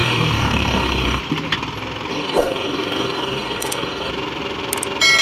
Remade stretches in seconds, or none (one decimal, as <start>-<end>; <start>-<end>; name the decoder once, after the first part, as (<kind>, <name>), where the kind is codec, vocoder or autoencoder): 0.0-1.2 (codec, DAC); 2.1-4.1